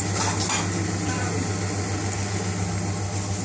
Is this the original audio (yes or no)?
yes